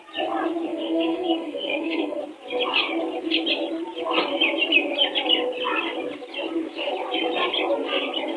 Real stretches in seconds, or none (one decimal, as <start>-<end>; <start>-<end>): 0.0-0.7; 2.2-8.4